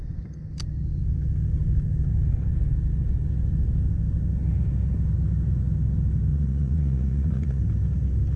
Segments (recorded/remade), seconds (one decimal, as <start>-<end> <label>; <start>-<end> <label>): 0.0-6.3 recorded; 6.3-7.6 remade; 7.6-8.4 recorded